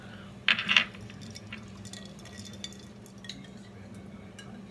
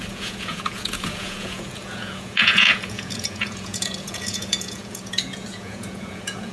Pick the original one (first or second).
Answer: first